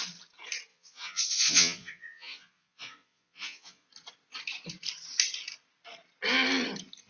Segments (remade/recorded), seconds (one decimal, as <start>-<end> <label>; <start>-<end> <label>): 0.0-0.7 recorded; 0.7-3.9 remade; 3.9-7.1 recorded